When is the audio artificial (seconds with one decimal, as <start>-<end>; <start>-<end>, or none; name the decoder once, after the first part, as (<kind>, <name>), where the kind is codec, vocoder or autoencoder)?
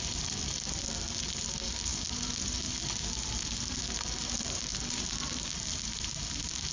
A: none